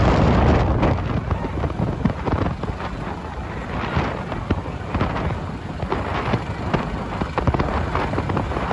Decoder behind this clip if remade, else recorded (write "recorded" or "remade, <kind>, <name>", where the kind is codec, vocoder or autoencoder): recorded